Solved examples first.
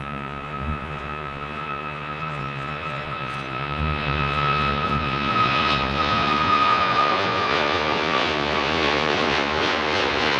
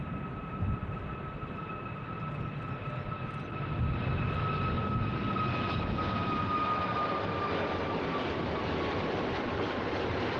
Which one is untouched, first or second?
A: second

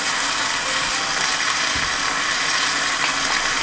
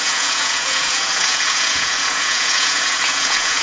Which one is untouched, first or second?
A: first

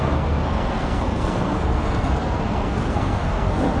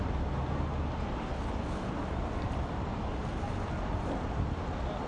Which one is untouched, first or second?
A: second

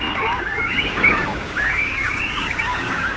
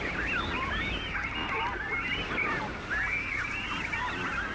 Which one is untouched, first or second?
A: second